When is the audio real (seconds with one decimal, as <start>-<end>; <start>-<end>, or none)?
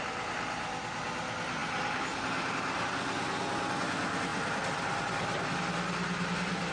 0.0-4.3; 5.6-6.7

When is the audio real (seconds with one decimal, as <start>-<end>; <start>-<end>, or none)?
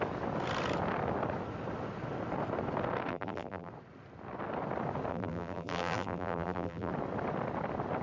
0.0-3.1; 3.7-5.1; 6.9-8.0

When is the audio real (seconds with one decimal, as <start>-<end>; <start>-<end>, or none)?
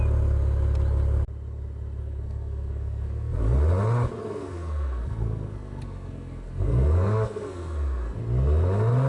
0.0-2.0; 3.4-4.2; 8.2-9.1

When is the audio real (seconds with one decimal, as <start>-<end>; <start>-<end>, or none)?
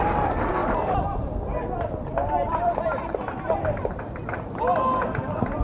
0.0-5.6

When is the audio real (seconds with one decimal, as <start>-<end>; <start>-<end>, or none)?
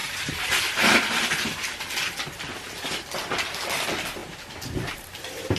1.8-5.6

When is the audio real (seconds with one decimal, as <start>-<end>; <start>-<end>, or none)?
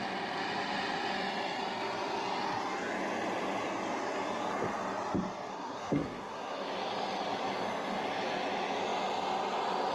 0.0-5.5; 6.7-9.9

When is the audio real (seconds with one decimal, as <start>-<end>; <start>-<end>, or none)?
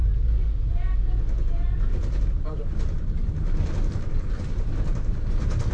0.7-1.9; 4.7-5.7